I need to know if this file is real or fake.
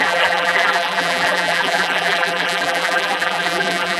fake